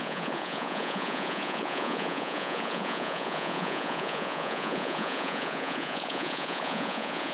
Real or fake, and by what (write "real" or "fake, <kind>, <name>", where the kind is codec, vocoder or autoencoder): fake, vocoder, Vocos